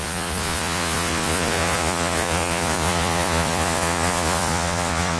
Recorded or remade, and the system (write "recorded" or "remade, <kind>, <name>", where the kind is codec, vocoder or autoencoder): remade, vocoder, Vocos